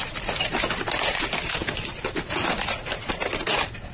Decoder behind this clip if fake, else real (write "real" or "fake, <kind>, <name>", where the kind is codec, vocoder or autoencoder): fake, vocoder, BigVGAN v2